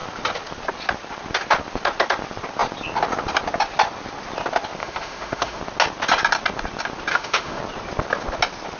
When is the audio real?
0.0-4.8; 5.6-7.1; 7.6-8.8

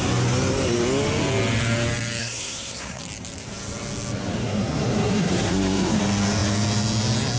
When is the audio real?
0.0-2.2; 3.0-4.4; 6.0-7.4